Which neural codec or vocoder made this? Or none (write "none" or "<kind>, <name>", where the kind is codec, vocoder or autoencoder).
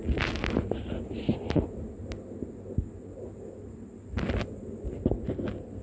none